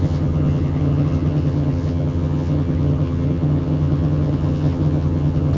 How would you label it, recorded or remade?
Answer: remade